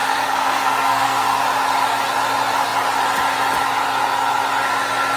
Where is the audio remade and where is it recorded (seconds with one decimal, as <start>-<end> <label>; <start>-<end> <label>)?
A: 0.0-1.4 remade; 1.4-5.2 recorded